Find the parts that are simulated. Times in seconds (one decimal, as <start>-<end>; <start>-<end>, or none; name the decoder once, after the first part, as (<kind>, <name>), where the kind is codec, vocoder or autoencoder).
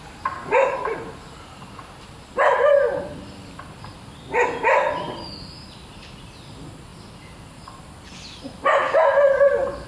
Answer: none